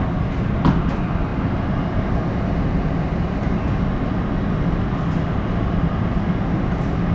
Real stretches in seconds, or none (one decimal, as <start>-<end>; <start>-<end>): 0.0-7.1